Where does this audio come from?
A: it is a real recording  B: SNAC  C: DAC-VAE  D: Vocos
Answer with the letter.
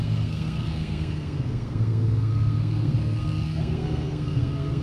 B